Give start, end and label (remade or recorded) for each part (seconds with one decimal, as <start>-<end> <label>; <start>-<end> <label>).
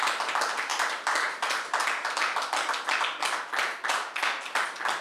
0.0-5.0 recorded